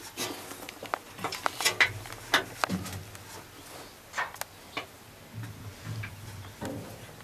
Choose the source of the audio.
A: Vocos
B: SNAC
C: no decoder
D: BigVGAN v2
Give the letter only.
C